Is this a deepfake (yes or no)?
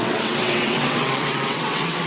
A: yes